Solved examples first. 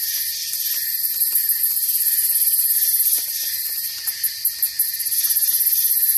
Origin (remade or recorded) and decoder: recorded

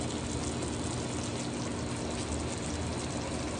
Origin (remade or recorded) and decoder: recorded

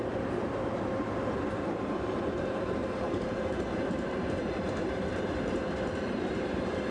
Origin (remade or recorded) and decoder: remade, vocoder, BigVGAN v2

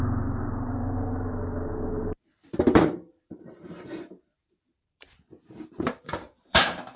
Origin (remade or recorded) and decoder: remade, vocoder, BigVGAN v2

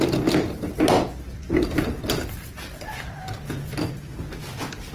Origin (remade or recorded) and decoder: recorded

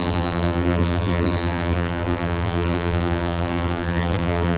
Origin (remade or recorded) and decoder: remade, vocoder, BigVGAN v2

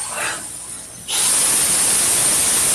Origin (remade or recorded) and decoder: recorded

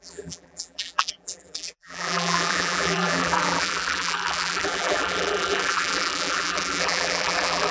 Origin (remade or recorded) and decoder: remade, vocoder, BigVGAN v2